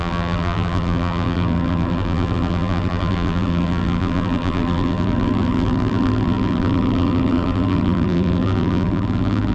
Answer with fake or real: fake